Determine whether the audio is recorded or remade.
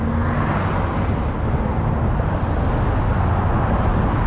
recorded